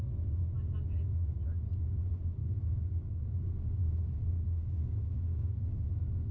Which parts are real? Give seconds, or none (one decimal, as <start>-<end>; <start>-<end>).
0.0-2.4; 3.2-3.8; 5.5-6.3